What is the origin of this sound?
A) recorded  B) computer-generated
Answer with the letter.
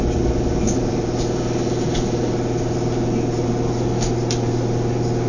A